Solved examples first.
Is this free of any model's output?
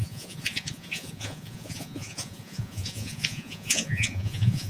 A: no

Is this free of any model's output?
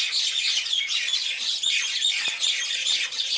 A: no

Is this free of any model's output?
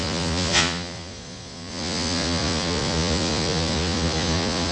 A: no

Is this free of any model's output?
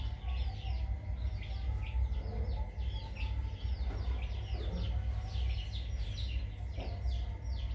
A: yes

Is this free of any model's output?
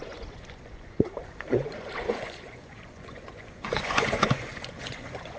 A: no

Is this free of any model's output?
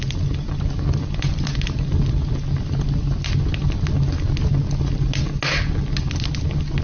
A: yes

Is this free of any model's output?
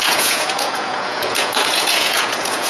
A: no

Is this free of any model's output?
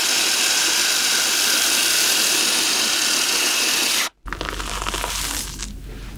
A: yes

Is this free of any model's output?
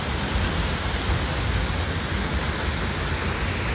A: yes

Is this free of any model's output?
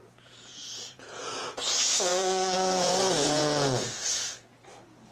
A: no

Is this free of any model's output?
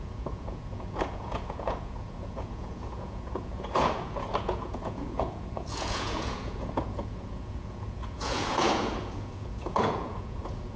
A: no